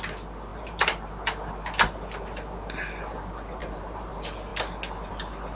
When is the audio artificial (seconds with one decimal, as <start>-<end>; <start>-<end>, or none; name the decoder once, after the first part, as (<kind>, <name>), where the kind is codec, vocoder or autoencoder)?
0.5-1.1 (vocoder, BigVGAN v2); 3.6-4.1

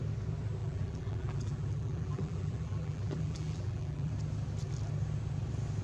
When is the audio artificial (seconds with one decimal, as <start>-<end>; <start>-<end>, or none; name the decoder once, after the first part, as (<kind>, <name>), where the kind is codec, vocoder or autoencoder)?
0.6-4.1 (vocoder, BigVGAN v2)